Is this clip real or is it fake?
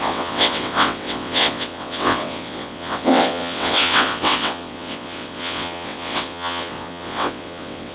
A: fake